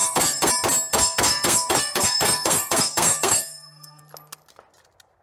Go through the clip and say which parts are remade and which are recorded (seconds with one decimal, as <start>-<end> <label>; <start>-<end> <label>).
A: 0.0-0.5 remade; 0.5-0.9 recorded; 0.9-4.0 remade; 4.0-5.2 recorded